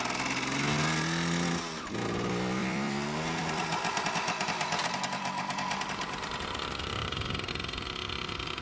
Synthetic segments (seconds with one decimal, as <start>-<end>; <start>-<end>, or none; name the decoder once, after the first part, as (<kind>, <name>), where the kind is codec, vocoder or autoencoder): 2.6-7.5 (vocoder, BigVGAN v2)